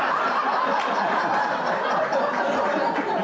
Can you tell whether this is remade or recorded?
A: recorded